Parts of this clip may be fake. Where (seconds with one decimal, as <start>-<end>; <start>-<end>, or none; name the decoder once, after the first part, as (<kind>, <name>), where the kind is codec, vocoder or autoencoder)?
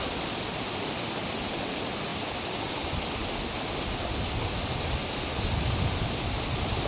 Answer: none